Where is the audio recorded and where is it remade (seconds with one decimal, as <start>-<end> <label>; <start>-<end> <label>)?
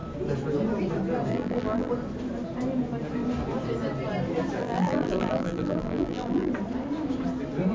0.0-1.3 recorded; 1.3-1.9 remade; 1.9-4.6 recorded; 4.6-6.5 remade; 6.5-7.7 recorded